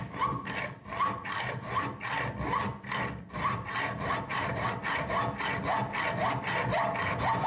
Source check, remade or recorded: recorded